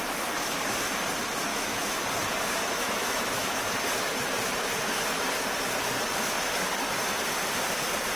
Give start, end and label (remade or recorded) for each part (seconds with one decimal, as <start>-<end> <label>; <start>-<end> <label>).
0.0-1.5 recorded; 1.5-2.0 remade; 2.0-2.6 recorded; 2.6-3.7 remade; 3.7-8.2 recorded